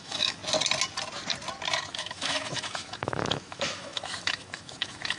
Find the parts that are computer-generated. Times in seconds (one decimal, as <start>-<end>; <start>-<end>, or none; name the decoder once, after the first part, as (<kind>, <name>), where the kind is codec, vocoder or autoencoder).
0.0-0.4 (autoencoder, DAC-VAE); 1.9-5.2